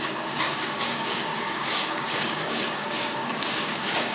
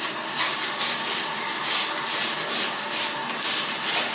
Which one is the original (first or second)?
second